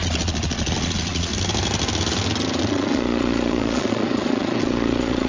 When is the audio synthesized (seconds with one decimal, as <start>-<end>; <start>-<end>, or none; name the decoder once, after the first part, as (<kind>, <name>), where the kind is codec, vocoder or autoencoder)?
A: 0.0-1.3 (vocoder, Vocos); 2.6-5.3